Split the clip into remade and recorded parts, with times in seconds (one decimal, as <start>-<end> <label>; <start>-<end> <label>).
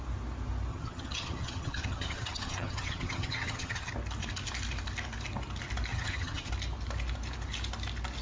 0.0-0.7 recorded; 0.7-3.9 remade; 3.9-5.9 recorded; 5.9-6.5 remade; 6.5-8.2 recorded